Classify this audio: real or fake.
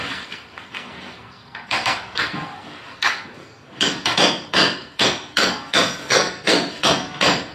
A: fake